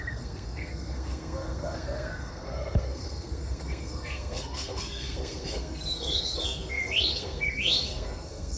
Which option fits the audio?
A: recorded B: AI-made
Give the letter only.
B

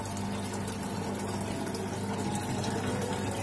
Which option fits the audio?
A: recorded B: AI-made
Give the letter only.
A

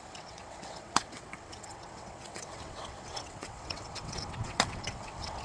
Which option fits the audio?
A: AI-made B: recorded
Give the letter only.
A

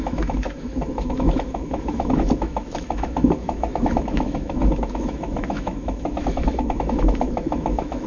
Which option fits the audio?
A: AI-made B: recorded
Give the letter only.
A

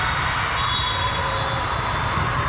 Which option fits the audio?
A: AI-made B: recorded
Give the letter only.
B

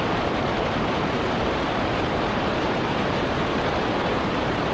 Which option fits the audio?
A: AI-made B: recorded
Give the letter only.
A